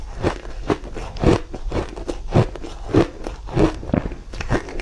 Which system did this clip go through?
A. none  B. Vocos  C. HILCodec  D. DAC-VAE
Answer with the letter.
A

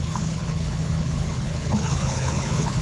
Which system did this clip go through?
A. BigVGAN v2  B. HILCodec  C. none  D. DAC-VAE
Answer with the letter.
B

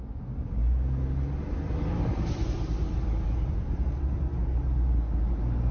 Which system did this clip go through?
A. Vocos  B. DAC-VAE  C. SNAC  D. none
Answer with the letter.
D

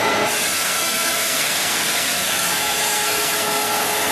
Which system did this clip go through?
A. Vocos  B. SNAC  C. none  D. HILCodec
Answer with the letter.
B